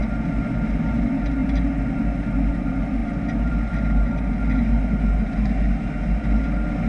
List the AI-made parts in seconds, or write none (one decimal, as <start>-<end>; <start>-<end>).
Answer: none